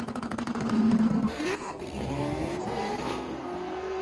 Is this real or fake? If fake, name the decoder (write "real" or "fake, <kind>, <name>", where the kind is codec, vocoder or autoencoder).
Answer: fake, codec, SNAC